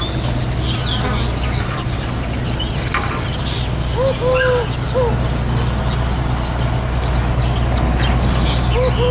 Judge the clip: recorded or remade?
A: recorded